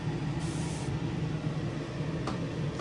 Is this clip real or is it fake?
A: real